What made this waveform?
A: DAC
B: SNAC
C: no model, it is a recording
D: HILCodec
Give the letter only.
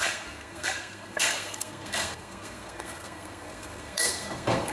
B